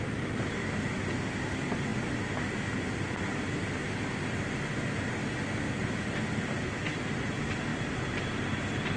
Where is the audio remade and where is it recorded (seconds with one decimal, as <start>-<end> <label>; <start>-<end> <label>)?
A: 0.0-9.0 recorded